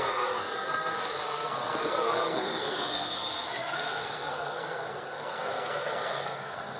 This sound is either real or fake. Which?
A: fake